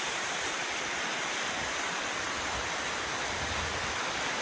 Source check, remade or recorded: recorded